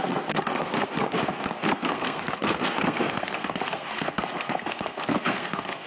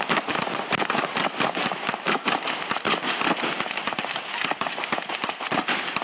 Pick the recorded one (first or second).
second